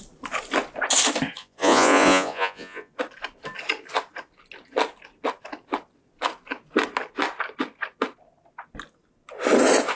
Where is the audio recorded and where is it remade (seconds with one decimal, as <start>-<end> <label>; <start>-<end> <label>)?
0.0-1.4 recorded; 1.4-2.9 remade; 2.9-10.0 recorded